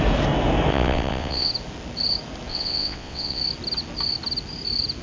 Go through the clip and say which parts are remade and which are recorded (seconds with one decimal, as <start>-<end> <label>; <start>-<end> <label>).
0.0-0.7 recorded; 0.7-1.5 remade; 1.5-2.5 recorded; 2.5-3.4 remade; 3.4-5.0 recorded